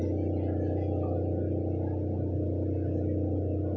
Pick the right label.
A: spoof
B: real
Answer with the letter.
B